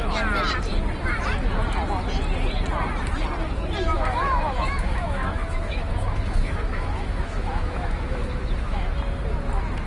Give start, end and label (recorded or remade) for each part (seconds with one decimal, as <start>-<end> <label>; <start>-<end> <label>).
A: 0.0-3.9 recorded; 3.9-8.8 remade; 8.8-9.9 recorded